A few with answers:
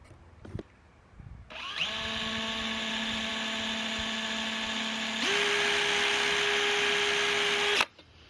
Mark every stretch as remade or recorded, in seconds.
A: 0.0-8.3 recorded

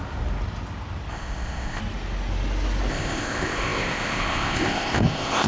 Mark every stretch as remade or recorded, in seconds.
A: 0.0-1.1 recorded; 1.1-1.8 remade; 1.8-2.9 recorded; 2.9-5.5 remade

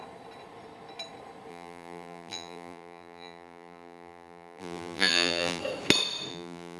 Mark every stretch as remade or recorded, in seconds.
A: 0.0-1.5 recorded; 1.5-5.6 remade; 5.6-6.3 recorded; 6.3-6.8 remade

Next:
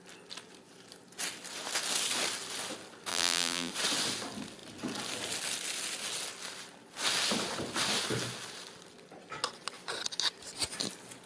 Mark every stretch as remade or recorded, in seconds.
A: 0.0-3.1 recorded; 3.1-3.7 remade; 3.7-11.3 recorded

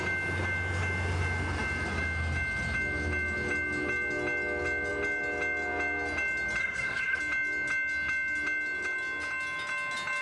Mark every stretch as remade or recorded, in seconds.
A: 0.0-6.6 recorded; 6.6-7.2 remade; 7.2-10.2 recorded